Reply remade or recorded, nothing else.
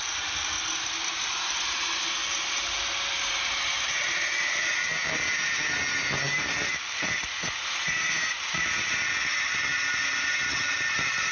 recorded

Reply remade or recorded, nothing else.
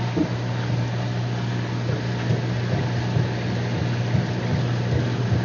recorded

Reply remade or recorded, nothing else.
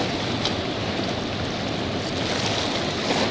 recorded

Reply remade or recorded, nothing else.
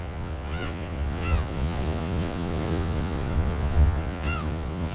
remade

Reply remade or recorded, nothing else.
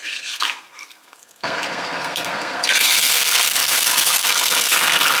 remade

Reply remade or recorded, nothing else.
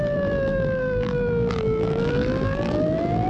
remade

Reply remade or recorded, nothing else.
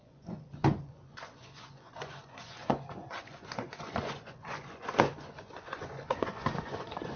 remade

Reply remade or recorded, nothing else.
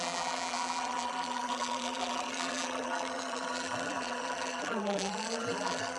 remade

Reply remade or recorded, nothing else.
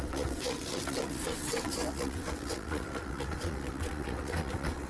remade